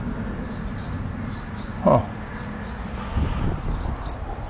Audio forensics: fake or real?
real